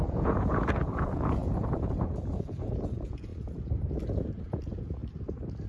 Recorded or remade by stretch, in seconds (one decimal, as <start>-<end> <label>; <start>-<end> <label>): 0.0-3.3 remade; 3.3-4.4 recorded; 4.4-5.0 remade; 5.0-5.7 recorded